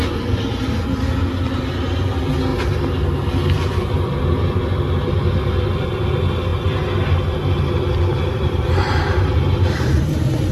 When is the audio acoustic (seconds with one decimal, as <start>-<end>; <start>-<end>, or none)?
0.0-8.1